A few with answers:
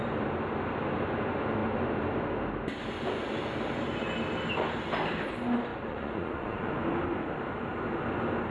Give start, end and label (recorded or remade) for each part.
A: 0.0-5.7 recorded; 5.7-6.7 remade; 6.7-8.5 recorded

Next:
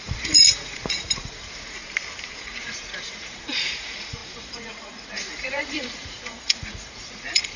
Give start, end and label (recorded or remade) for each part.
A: 0.0-1.8 remade; 1.8-2.4 recorded; 2.4-7.6 remade

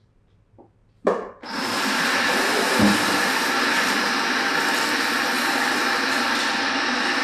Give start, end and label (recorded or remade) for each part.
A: 0.0-7.2 recorded

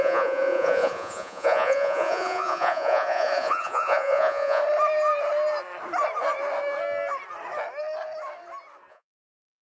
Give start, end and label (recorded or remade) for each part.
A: 0.0-4.6 remade; 4.6-8.9 recorded; 8.9-9.6 remade

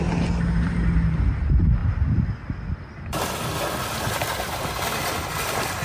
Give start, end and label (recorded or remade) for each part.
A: 0.0-5.8 recorded

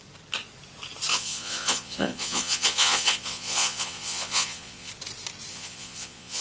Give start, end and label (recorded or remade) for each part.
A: 0.0-1.1 recorded; 1.1-4.9 remade; 4.9-5.5 recorded; 5.5-6.4 remade

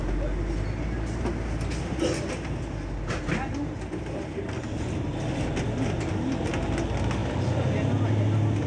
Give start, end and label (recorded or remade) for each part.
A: 0.0-8.7 recorded

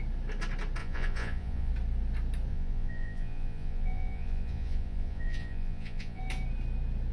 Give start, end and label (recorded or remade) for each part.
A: 0.0-0.8 recorded; 0.8-1.7 remade; 1.7-2.5 recorded; 2.5-6.2 remade; 6.2-7.1 recorded